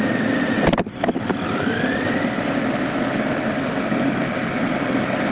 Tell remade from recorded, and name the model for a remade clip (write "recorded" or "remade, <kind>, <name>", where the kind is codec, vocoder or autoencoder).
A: recorded